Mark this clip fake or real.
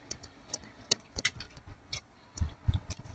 fake